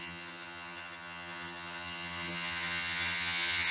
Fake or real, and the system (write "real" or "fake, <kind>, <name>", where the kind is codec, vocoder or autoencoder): fake, vocoder, HiFi-GAN